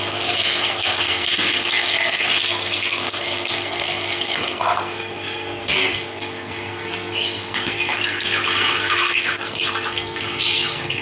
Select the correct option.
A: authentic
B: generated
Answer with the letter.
B